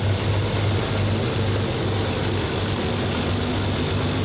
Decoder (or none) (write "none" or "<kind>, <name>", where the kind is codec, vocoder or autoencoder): none